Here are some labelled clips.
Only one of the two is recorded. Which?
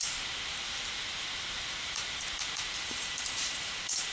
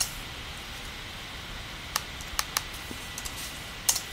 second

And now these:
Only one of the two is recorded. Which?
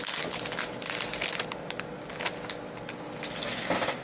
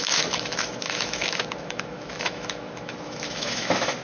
first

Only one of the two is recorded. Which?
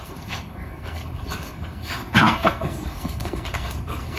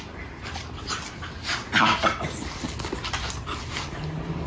second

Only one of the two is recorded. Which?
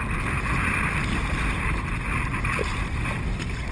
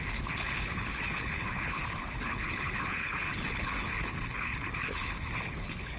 first